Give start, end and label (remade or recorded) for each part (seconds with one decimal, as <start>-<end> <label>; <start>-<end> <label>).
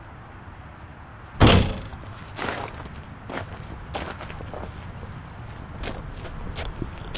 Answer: 0.0-7.2 recorded